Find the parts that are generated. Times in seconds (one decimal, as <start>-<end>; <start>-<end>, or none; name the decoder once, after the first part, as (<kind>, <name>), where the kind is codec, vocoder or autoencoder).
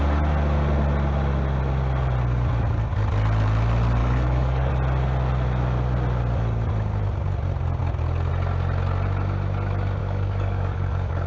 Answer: 4.0-4.7 (codec, DAC); 10.0-11.3